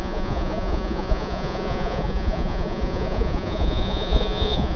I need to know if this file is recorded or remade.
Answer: remade